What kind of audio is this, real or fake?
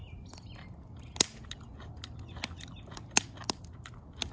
real